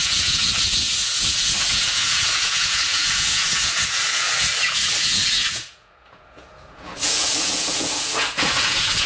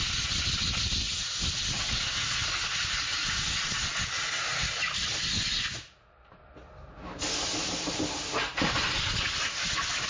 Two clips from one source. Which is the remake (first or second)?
first